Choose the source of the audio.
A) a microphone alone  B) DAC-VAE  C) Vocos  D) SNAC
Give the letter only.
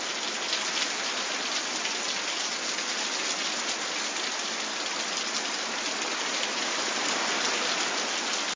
A